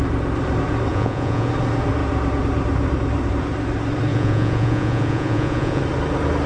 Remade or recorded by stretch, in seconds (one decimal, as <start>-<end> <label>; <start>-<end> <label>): 0.0-0.9 recorded; 0.9-1.5 remade; 1.5-4.1 recorded; 4.1-5.8 remade; 5.8-6.5 recorded